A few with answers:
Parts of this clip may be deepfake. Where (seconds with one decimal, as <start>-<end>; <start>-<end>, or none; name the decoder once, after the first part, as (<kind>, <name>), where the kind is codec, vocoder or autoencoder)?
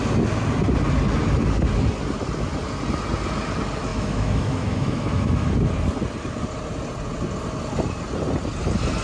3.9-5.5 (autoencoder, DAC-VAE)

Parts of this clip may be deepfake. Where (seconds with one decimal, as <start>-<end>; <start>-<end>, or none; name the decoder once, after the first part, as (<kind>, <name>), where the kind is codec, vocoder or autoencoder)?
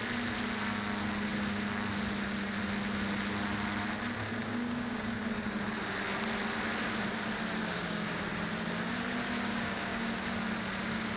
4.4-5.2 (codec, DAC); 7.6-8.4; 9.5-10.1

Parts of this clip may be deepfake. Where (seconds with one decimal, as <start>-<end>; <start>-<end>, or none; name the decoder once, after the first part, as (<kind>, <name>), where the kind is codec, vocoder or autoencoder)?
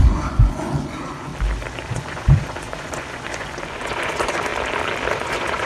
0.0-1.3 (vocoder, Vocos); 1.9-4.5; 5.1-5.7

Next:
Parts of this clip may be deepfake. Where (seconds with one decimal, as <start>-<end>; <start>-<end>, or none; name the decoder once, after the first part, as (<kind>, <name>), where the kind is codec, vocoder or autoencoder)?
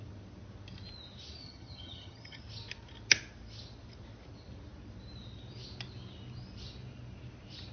1.4-2.4 (vocoder, HiFi-GAN)